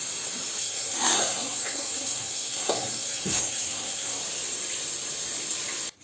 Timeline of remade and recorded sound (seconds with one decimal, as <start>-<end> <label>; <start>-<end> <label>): 0.0-0.6 recorded; 0.6-4.2 remade; 4.2-6.0 recorded

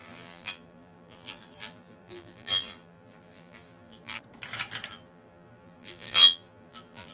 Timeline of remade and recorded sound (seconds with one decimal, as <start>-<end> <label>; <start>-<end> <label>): 0.0-4.2 remade; 4.2-4.9 recorded; 4.9-7.1 remade